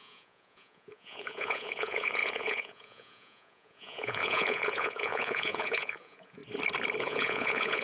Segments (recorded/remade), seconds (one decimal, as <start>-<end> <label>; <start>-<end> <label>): 0.0-6.4 remade; 6.4-7.0 recorded; 7.0-7.8 remade